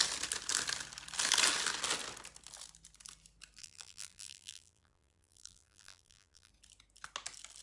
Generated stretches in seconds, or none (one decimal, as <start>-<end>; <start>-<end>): 3.6-6.5